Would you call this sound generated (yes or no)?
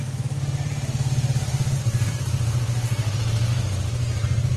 yes